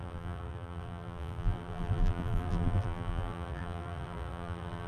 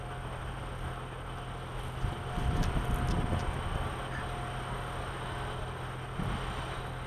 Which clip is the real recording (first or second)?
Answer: second